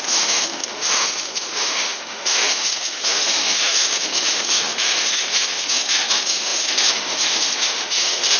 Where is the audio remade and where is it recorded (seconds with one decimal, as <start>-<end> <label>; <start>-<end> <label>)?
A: 0.0-8.4 remade